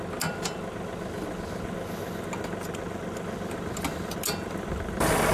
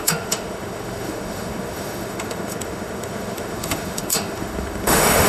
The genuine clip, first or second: first